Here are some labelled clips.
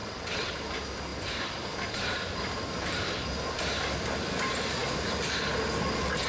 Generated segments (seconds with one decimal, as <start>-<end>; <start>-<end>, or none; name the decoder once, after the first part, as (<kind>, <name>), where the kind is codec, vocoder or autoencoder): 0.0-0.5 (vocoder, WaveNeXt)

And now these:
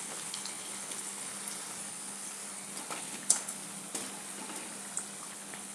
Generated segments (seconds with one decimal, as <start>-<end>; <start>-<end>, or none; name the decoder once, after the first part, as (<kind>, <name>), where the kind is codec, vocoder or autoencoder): 0.0-1.3 (codec, HILCodec); 1.9-2.4; 3.0-3.6; 5.2-5.7

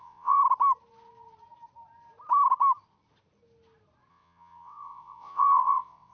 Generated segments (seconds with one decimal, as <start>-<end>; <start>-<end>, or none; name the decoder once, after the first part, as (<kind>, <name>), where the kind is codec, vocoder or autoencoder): 0.0-0.4 (vocoder, WaveNeXt); 4.1-6.1